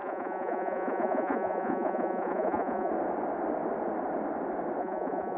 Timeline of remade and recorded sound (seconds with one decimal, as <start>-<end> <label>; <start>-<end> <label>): 0.0-2.9 remade; 2.9-4.8 recorded; 4.8-5.4 remade